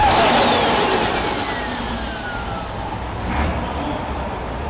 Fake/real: real